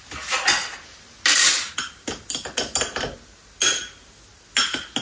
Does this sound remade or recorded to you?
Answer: recorded